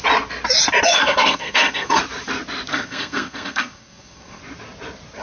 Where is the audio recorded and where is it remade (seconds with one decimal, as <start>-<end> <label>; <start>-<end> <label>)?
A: 0.0-0.9 recorded; 0.9-2.0 remade; 2.0-2.7 recorded; 2.7-4.4 remade; 4.4-5.2 recorded